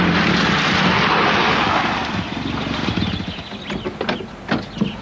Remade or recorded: recorded